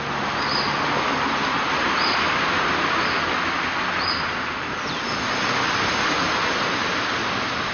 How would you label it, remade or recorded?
recorded